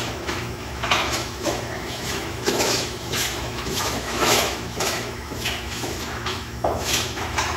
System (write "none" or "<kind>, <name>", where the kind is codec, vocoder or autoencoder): autoencoder, DAC-VAE